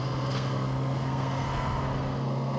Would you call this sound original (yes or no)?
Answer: no